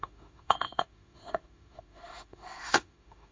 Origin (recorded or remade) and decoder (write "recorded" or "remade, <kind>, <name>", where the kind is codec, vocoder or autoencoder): remade, autoencoder, DAC-VAE